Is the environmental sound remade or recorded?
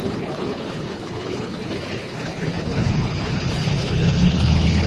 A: remade